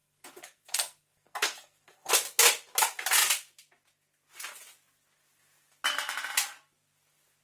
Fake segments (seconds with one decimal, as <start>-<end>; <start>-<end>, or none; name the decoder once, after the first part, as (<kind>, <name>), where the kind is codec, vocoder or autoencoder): 0.0-2.1 (codec, SNAC)